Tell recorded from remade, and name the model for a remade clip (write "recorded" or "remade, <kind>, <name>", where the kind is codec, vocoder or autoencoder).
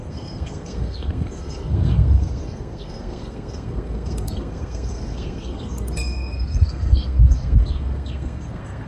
remade, codec, SNAC